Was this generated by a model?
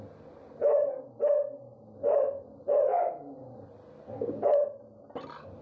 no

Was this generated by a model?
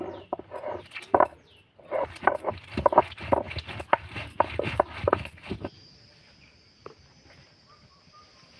no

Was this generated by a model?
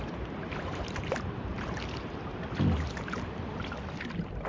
no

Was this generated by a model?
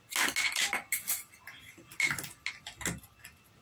no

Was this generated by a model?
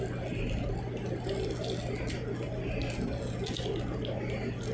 no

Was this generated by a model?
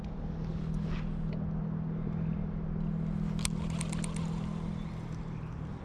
no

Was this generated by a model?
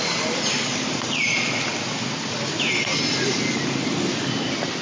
no